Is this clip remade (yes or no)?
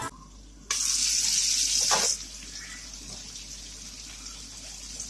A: no